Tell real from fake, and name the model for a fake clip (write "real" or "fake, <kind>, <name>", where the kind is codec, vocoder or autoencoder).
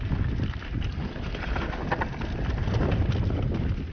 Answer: real